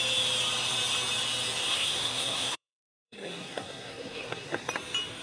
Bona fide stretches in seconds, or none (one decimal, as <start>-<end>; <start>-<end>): 0.0-1.6; 4.7-5.2